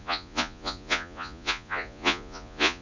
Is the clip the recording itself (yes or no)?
no